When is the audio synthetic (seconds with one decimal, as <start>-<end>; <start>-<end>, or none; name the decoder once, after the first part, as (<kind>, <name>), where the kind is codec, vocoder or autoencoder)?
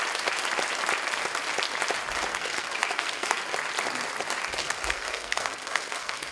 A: 2.3-3.4 (codec, SNAC); 4.6-6.3